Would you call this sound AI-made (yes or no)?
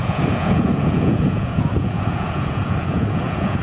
yes